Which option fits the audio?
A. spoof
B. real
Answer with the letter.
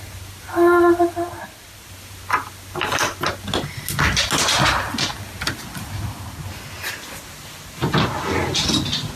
B